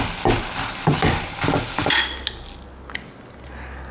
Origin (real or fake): real